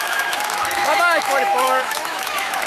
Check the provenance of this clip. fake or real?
fake